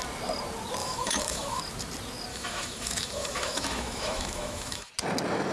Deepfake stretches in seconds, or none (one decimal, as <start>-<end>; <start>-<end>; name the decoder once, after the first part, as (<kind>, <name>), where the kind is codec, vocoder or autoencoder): 0.8-1.6 (autoencoder, DAC-VAE); 2.3-4.9